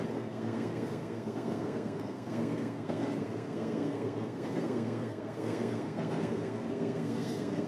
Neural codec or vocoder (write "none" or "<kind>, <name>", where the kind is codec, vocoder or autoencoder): codec, SNAC